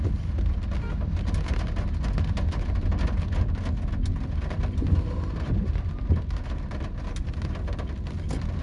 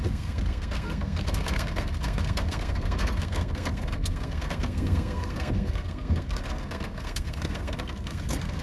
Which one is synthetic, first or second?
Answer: second